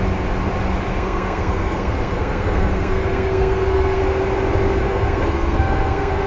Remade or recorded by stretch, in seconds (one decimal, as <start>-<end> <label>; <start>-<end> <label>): 0.0-0.9 recorded; 0.9-4.0 remade; 4.0-4.8 recorded; 4.8-6.3 remade